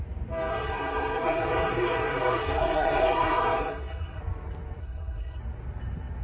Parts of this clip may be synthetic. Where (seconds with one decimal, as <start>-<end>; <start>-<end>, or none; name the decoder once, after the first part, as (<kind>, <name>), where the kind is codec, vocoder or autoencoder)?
0.5-4.2 (codec, SNAC); 4.8-5.4